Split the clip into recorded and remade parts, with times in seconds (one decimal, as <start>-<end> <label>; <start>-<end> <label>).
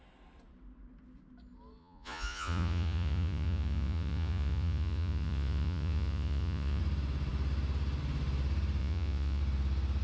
0.0-1.8 recorded; 1.8-6.8 remade; 6.8-8.8 recorded; 8.8-9.4 remade; 9.4-10.0 recorded